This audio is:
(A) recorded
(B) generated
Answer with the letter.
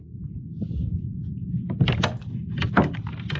B